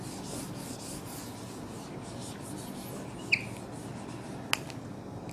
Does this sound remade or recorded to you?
recorded